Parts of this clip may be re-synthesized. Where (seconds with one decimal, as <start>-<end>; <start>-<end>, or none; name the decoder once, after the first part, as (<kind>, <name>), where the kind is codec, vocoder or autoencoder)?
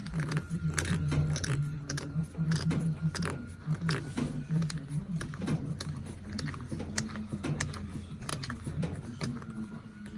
0.0-1.6 (vocoder, BigVGAN v2); 8.3-9.0